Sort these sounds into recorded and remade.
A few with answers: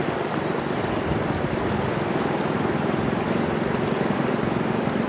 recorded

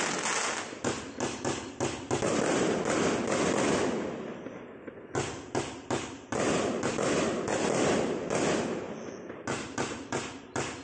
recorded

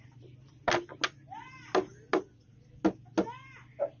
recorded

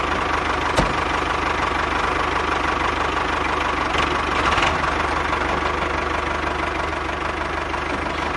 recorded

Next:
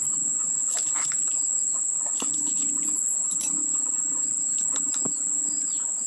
recorded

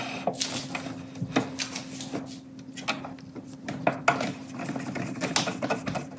recorded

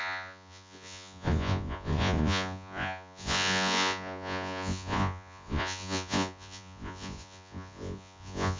remade